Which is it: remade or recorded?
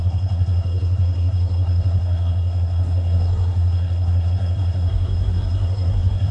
remade